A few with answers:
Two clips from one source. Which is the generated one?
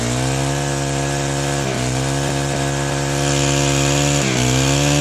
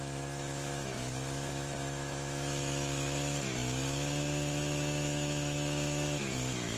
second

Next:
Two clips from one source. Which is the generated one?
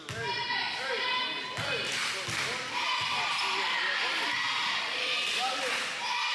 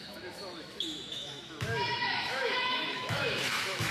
second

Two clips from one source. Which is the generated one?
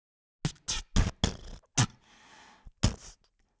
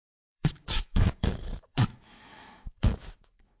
second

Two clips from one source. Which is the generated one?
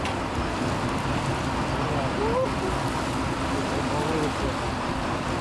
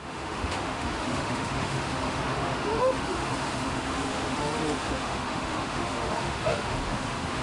second